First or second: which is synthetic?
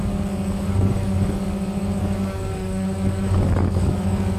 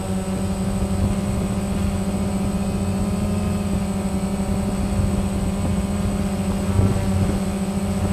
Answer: first